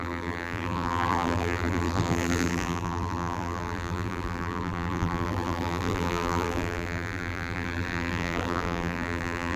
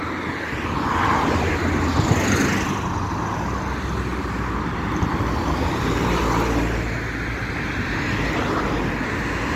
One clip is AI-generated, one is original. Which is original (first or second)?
second